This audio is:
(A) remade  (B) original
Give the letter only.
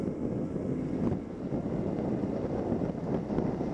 B